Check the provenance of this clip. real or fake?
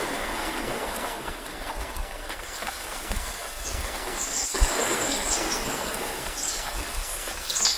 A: fake